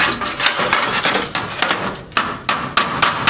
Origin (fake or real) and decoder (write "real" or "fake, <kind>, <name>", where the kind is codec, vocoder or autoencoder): real